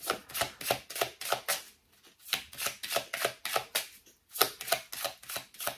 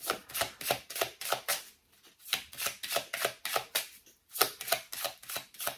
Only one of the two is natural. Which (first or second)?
first